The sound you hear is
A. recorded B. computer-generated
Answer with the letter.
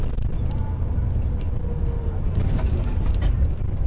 A